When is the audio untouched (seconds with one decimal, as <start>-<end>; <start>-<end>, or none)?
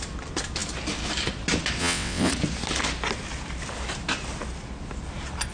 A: 0.0-1.8; 2.3-5.5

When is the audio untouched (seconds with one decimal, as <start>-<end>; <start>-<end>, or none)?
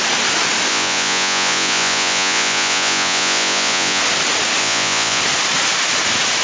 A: 0.0-0.7; 4.0-4.6; 5.2-6.4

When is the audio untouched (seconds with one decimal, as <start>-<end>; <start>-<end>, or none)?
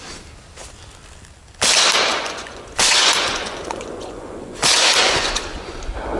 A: 0.0-2.1; 5.8-6.2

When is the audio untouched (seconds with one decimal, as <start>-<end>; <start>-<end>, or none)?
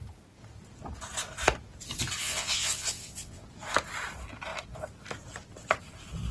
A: 0.0-2.2; 3.4-6.3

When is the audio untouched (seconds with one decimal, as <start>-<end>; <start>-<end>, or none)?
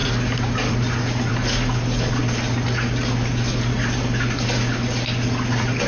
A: 0.0-5.9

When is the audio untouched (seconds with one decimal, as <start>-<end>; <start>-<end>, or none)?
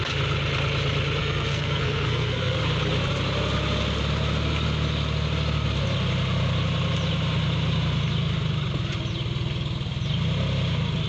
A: 0.0-1.2; 2.6-11.1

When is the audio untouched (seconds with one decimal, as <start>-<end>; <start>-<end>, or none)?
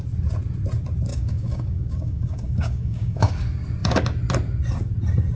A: 0.0-1.1; 3.3-5.4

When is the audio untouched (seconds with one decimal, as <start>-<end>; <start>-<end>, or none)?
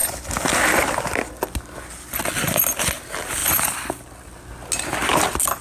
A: 0.0-5.6